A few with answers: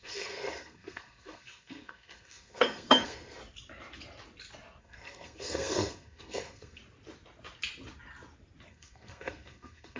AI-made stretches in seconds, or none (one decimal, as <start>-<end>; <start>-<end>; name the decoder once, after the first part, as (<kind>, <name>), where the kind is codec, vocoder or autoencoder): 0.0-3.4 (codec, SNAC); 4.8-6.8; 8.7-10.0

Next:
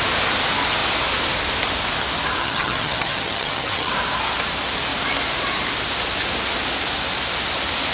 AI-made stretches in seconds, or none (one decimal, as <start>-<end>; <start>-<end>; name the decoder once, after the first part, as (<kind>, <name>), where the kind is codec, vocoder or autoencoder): 2.4-3.9 (vocoder, HiFi-GAN)

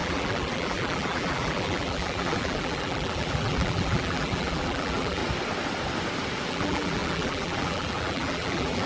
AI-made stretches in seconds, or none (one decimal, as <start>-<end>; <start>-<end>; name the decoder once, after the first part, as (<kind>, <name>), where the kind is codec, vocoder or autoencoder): 0.0-5.2 (vocoder, BigVGAN v2); 6.5-8.9

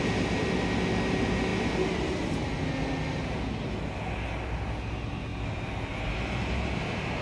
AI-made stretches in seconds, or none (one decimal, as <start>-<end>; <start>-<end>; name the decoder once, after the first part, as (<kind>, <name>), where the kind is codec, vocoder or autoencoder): none

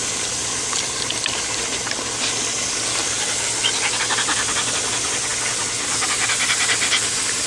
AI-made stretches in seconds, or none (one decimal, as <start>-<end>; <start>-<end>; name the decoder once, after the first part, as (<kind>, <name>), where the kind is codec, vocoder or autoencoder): none